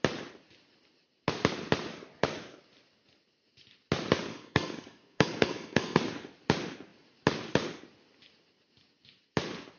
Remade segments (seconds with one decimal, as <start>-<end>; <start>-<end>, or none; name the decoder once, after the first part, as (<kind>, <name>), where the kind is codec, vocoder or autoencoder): 4.3-6.0 (codec, SNAC)